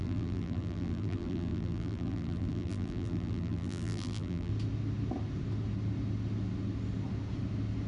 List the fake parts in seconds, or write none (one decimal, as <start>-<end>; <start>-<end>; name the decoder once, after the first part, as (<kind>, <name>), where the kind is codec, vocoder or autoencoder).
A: 0.0-4.5 (vocoder, BigVGAN v2)